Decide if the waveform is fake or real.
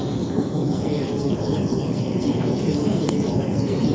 fake